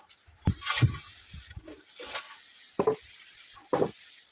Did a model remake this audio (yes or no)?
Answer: no